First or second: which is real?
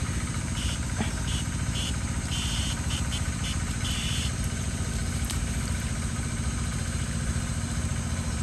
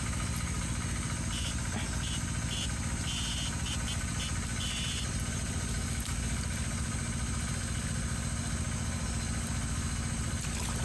second